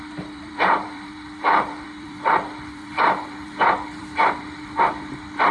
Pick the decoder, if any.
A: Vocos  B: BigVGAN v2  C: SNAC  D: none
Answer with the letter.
B